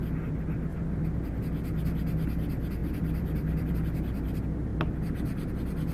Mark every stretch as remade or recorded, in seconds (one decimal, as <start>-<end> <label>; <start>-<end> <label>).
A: 0.0-0.7 recorded; 0.7-1.3 remade; 1.3-2.8 recorded; 2.8-3.7 remade; 3.7-5.9 recorded